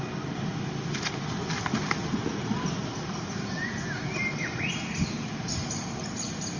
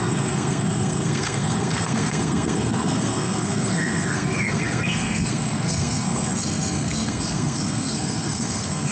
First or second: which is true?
first